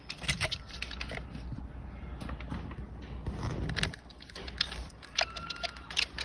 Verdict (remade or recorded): recorded